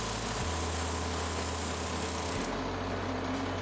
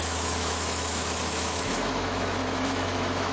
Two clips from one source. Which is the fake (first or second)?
second